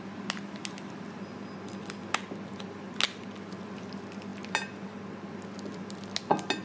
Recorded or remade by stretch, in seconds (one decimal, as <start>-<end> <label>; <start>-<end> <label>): 0.0-6.6 recorded